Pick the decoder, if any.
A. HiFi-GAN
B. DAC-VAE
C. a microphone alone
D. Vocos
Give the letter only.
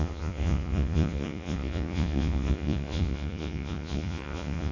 D